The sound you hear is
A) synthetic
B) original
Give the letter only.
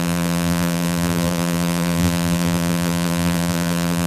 A